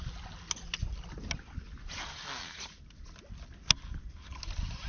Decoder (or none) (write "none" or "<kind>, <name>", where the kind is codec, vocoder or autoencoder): none